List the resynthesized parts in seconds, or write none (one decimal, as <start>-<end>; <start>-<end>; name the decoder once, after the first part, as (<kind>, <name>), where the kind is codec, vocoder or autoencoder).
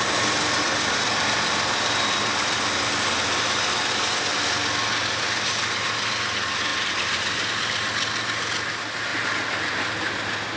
none